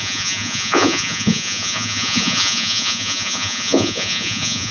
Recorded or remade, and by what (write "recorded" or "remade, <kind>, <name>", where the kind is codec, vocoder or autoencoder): remade, vocoder, Vocos